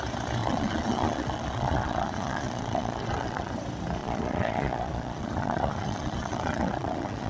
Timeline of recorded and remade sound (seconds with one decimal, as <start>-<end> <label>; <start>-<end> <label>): 0.0-0.4 recorded; 0.4-3.5 remade; 3.5-4.0 recorded; 4.0-7.3 remade